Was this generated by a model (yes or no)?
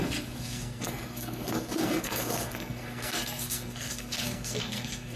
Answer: yes